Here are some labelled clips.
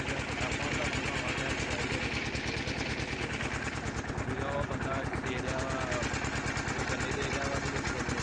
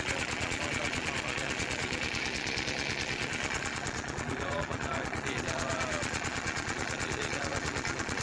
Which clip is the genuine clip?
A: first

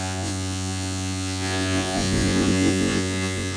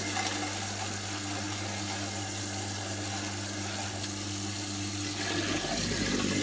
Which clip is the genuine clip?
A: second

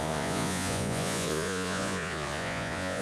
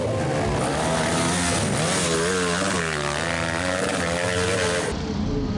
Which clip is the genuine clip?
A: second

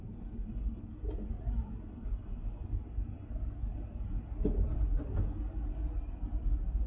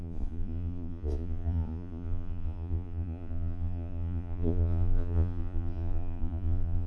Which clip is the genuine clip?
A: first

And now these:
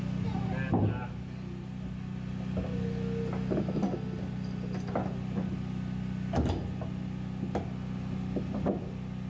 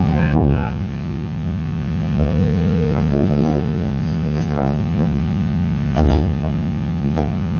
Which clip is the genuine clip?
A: first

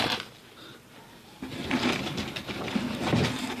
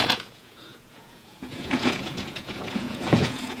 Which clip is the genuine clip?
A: first